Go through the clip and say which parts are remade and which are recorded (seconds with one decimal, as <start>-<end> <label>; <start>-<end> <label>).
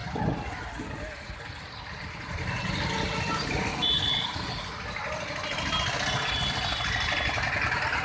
0.0-8.0 recorded